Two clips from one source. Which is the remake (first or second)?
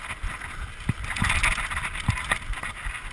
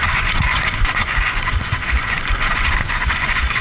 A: second